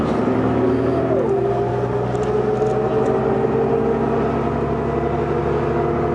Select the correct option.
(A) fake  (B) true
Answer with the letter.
B